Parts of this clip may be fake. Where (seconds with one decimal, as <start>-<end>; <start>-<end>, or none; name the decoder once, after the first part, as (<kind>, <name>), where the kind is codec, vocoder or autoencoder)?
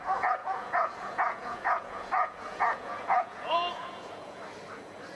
0.0-4.4 (vocoder, Vocos)